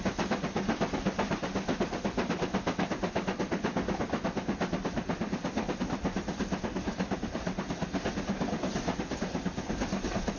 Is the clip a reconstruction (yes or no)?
no